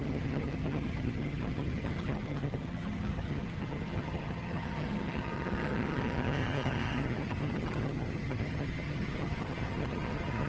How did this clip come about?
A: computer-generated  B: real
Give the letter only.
A